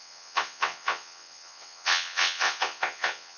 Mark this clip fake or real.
fake